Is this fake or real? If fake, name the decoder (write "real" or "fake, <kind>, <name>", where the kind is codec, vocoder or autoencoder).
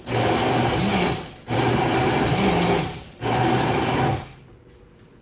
real